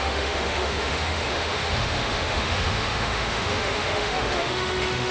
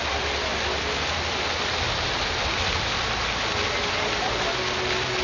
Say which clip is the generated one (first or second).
first